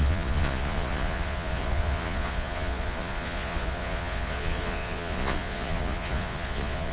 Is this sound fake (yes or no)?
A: yes